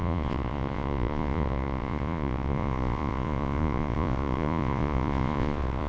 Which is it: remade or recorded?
remade